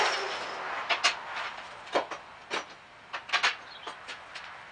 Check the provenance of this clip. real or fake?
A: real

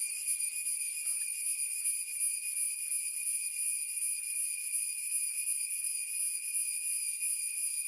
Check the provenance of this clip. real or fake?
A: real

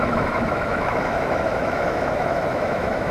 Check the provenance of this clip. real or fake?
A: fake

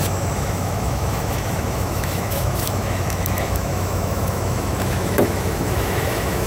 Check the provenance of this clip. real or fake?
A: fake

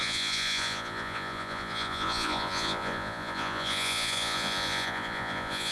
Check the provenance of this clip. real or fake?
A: fake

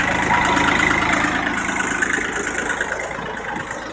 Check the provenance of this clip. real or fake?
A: real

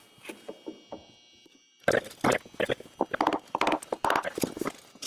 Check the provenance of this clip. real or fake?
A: real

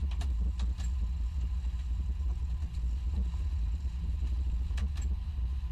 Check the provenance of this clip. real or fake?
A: real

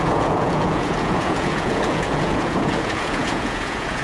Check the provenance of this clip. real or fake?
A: fake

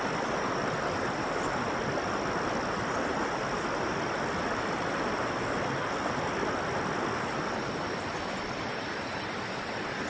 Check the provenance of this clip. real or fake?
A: real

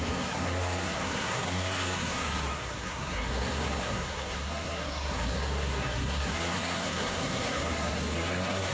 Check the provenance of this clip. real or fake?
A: fake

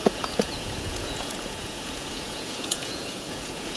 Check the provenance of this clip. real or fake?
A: fake